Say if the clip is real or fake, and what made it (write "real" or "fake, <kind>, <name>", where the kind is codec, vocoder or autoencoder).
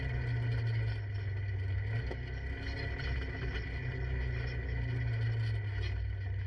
real